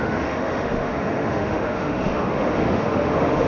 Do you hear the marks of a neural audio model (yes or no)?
yes